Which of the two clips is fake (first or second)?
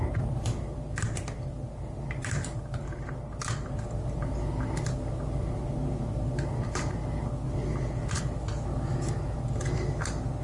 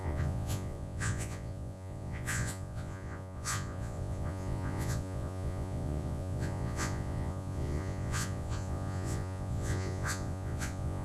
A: second